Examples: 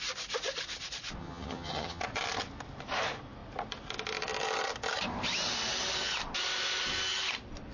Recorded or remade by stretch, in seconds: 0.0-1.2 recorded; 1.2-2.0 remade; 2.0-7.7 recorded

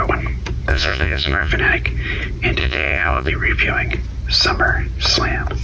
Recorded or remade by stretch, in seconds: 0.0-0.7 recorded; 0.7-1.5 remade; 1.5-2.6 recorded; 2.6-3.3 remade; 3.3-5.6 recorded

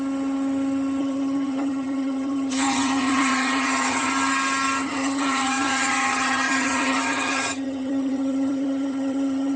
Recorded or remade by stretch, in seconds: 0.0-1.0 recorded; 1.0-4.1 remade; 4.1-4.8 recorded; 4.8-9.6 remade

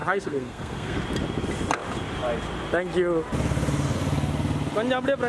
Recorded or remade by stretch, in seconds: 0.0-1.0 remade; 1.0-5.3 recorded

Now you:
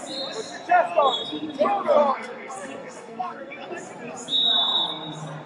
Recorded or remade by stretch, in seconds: 0.0-2.0 recorded; 2.0-3.7 remade; 3.7-5.5 recorded

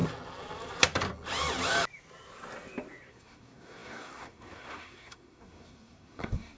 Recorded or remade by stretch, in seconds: 0.0-3.1 recorded; 3.1-6.6 remade